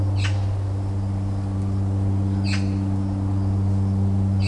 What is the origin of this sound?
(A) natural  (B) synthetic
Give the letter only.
A